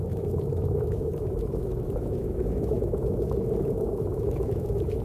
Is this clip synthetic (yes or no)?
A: yes